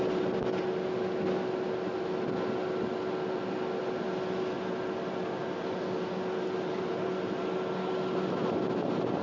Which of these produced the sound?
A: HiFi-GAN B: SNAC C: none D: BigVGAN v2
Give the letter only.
C